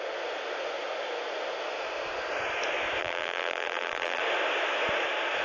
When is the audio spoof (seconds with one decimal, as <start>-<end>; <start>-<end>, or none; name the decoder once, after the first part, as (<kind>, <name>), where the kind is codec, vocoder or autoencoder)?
3.0-4.2 (vocoder, BigVGAN v2)